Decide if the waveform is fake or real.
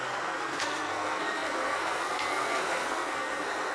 fake